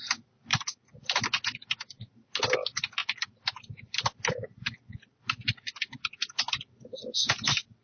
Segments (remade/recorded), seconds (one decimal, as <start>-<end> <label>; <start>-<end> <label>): 0.0-7.8 recorded